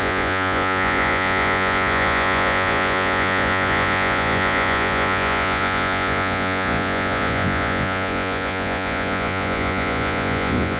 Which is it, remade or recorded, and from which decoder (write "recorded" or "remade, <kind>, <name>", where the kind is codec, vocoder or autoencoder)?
remade, vocoder, Vocos